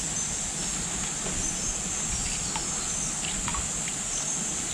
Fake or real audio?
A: real